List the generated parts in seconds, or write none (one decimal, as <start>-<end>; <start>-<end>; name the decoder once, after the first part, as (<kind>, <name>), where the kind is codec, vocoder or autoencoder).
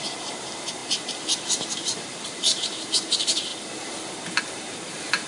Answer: 0.0-3.5 (vocoder, BigVGAN v2); 4.4-5.3